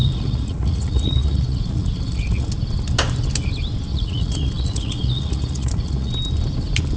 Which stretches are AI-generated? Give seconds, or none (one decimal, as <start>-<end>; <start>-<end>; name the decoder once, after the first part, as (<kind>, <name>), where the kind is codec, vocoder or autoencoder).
0.0-2.5 (vocoder, Vocos); 3.9-6.1